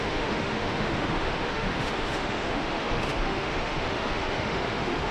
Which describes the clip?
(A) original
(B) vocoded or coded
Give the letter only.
B